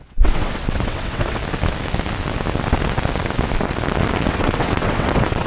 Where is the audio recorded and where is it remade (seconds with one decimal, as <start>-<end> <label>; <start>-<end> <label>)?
0.0-1.4 remade; 1.4-4.3 recorded; 4.3-5.5 remade